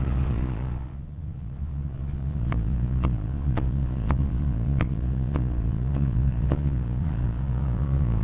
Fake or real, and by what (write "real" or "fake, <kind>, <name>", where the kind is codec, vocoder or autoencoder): fake, vocoder, Vocos